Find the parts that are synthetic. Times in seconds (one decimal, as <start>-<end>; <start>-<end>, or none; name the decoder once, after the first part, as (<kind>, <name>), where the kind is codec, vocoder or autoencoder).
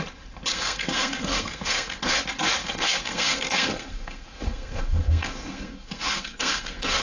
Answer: 0.5-2.2 (codec, SNAC); 2.6-7.0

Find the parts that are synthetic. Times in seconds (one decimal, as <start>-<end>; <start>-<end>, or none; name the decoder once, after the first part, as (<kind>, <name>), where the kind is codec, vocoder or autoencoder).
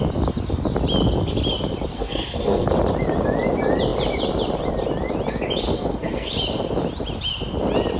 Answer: 1.9-2.7 (codec, SNAC); 5.7-6.3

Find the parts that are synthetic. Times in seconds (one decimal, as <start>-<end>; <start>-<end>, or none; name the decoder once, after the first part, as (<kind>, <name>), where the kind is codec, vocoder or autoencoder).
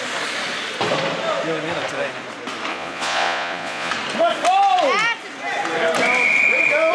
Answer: 2.7-3.9 (vocoder, Vocos)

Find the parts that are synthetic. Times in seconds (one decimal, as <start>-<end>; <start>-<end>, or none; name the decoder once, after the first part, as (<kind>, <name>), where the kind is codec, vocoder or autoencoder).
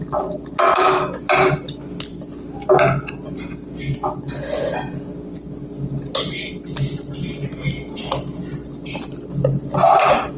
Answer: none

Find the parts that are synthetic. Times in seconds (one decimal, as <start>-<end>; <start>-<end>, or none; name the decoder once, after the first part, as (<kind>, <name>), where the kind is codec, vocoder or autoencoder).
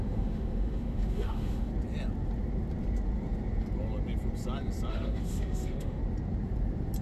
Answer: 0.0-1.7 (autoencoder, DAC-VAE); 4.9-6.0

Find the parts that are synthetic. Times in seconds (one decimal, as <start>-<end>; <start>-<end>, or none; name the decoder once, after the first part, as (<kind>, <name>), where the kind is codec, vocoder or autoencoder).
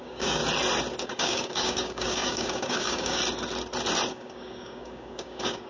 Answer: 0.0-0.4 (codec, DAC); 1.0-3.2; 4.1-5.7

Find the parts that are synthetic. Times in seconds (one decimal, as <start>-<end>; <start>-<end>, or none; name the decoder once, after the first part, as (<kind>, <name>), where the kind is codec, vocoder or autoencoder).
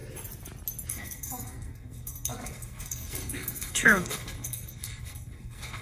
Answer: 0.9-5.8 (codec, SNAC)